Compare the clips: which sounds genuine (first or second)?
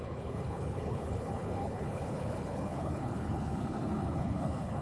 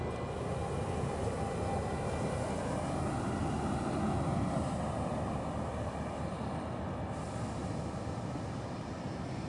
second